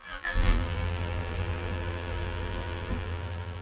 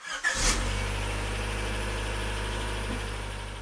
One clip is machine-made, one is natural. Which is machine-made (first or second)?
first